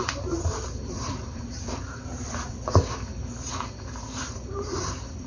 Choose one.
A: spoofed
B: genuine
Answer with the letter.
A